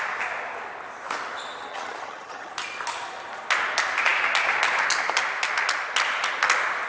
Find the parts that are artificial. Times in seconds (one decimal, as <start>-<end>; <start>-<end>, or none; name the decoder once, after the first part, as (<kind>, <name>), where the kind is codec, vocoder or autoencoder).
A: 1.7-2.5 (vocoder, HiFi-GAN)